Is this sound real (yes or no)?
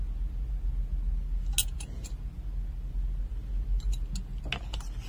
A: yes